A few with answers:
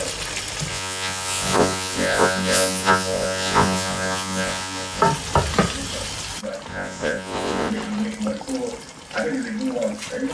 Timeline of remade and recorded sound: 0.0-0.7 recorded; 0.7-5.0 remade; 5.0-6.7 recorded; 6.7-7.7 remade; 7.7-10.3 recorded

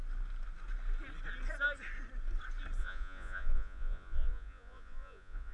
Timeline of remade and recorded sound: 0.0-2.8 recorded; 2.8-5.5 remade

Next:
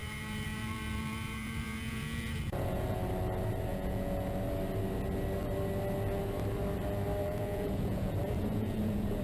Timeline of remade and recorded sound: 0.0-3.0 remade; 3.0-3.7 recorded; 3.7-4.4 remade; 4.4-7.2 recorded; 7.2-9.2 remade

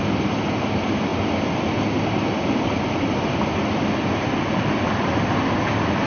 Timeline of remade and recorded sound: 0.0-6.1 recorded

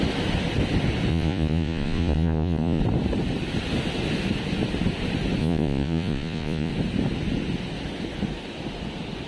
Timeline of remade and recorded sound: 0.0-1.1 recorded; 1.1-2.8 remade; 2.8-5.4 recorded; 5.4-6.7 remade; 6.7-9.3 recorded

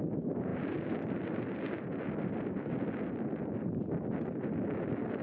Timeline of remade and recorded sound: 0.0-5.2 recorded